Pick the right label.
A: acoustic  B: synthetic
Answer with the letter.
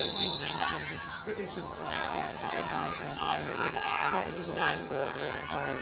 B